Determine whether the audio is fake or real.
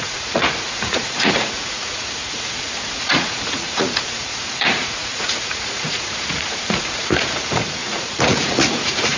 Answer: fake